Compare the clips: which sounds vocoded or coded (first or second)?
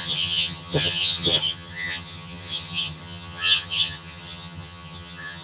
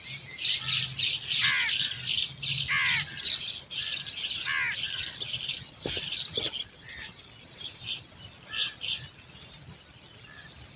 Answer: first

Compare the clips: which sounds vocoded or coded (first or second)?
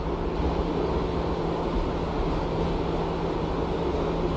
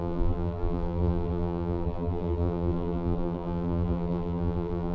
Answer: second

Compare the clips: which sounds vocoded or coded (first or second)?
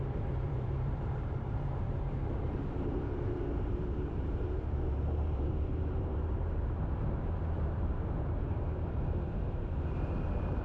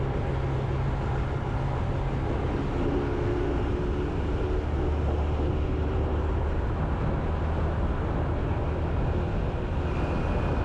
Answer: first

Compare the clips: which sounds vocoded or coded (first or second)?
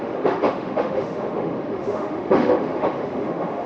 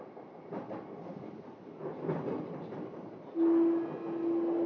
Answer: first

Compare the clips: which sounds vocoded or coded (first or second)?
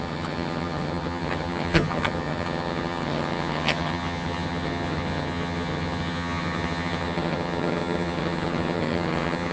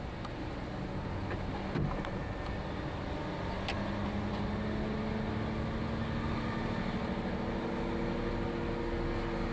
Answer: first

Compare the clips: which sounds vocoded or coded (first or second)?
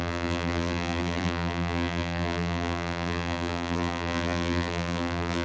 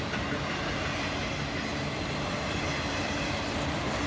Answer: first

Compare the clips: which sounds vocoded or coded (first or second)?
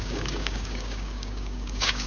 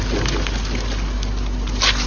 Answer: first